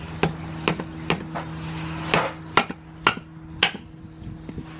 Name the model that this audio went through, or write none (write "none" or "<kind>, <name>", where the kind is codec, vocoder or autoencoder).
none